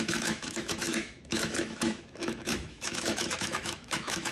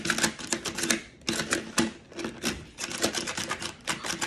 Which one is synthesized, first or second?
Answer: first